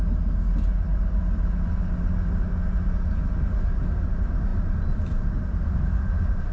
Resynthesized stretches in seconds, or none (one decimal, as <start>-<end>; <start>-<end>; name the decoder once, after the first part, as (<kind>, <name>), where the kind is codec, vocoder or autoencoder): 4.5-6.5 (vocoder, BigVGAN v2)